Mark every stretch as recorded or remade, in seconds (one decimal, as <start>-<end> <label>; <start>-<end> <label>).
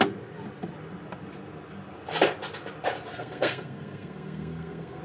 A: 0.0-3.1 recorded; 3.1-5.0 remade